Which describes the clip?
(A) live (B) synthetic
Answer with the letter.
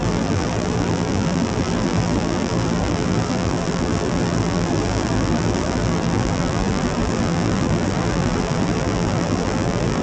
B